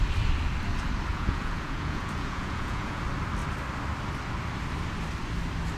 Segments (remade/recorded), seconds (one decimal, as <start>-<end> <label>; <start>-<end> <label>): 0.0-1.1 recorded; 1.1-3.0 remade; 3.0-5.8 recorded